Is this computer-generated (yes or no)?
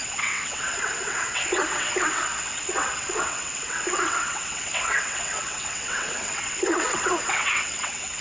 yes